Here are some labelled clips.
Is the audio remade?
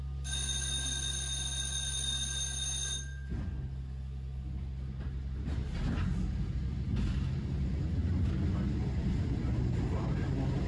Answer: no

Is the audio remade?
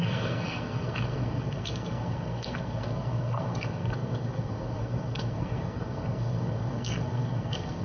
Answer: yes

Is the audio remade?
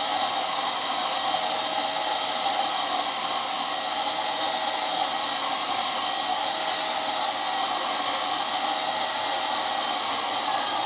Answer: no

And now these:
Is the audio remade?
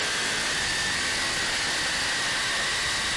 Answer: no